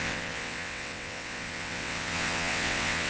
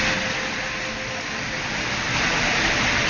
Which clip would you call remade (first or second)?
first